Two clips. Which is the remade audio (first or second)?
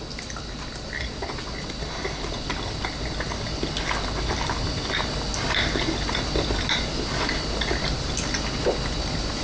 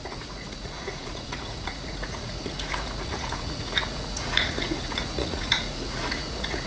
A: second